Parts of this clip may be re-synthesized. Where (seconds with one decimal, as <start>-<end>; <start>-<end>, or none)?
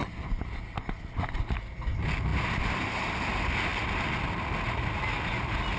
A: none